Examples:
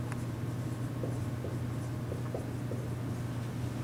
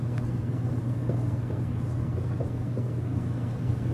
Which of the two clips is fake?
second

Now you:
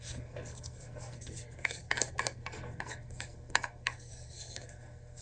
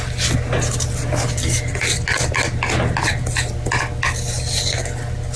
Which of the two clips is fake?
first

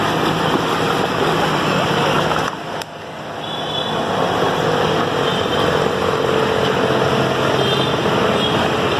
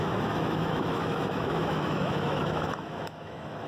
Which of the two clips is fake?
second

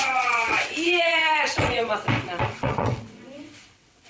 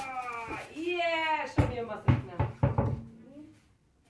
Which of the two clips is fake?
first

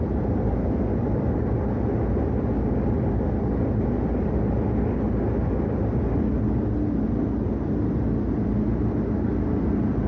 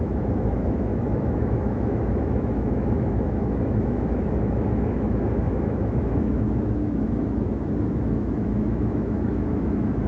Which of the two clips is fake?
second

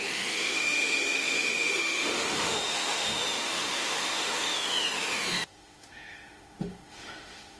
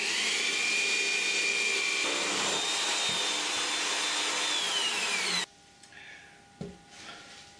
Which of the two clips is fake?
first